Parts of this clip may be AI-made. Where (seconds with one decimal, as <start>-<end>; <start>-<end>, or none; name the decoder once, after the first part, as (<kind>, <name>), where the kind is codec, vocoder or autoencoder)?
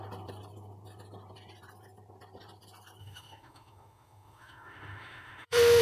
3.0-5.8 (autoencoder, DAC-VAE)